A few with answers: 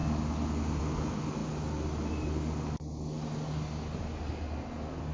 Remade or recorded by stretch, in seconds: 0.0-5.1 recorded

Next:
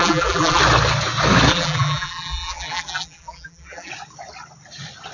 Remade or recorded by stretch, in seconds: 0.0-0.6 remade; 0.6-1.5 recorded; 1.5-3.9 remade; 3.9-5.1 recorded

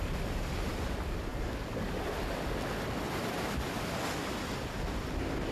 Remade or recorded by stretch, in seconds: 0.0-5.5 recorded

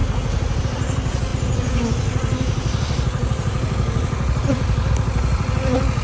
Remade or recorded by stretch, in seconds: 0.0-6.0 recorded

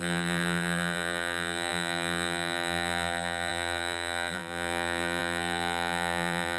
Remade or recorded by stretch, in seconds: 0.0-6.6 remade

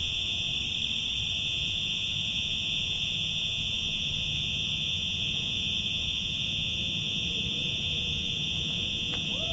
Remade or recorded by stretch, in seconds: 0.0-0.5 remade; 0.5-1.3 recorded; 1.3-9.5 remade

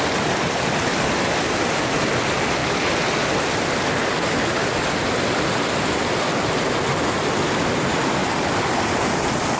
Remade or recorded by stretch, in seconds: 0.0-8.2 recorded; 8.2-8.7 remade; 8.7-9.6 recorded